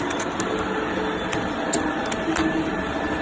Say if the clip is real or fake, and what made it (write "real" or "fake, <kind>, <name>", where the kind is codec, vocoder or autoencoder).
real